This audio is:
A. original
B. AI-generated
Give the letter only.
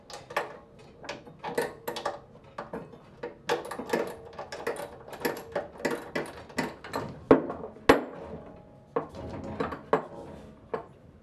A